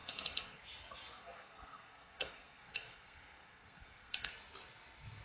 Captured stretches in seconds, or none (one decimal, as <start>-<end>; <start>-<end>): 0.6-1.2; 4.3-5.2